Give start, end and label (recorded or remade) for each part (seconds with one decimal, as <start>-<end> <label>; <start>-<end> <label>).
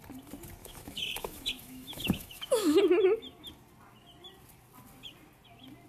0.0-0.6 recorded; 0.6-2.8 remade; 2.8-5.9 recorded